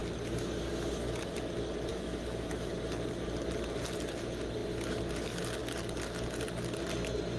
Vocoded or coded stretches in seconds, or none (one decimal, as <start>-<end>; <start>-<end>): 1.9-2.7